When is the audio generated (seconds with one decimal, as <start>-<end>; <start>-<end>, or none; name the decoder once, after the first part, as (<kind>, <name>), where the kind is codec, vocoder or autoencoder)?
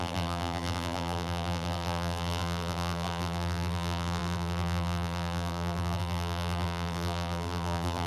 0.0-8.1 (vocoder, BigVGAN v2)